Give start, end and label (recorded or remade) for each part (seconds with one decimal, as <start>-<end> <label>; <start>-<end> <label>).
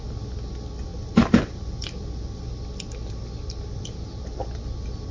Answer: 0.0-5.1 recorded